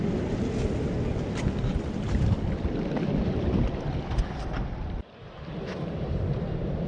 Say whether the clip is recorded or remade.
recorded